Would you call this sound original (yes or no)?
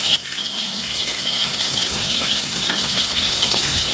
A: no